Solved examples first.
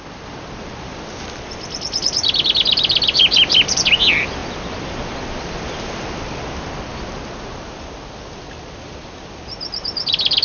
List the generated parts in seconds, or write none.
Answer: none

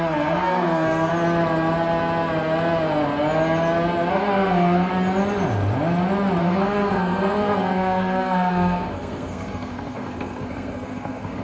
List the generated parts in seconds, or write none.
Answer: 0.0-1.1 (codec, SNAC); 4.1-4.9; 6.4-11.4